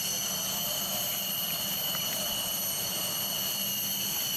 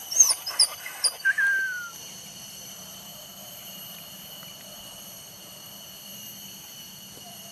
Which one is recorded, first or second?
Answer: first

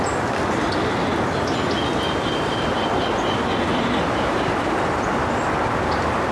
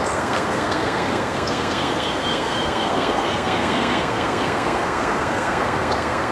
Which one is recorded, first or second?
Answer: first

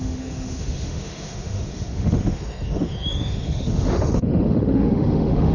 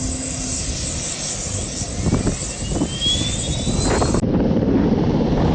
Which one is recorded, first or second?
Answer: second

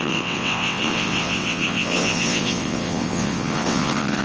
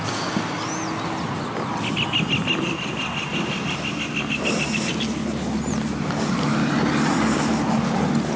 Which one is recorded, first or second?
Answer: second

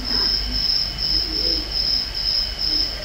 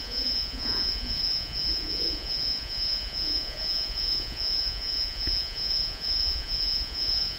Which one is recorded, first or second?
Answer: first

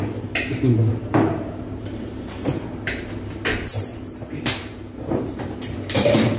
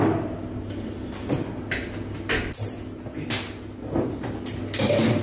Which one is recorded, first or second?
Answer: second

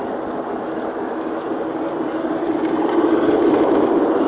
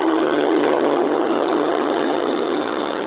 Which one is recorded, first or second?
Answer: first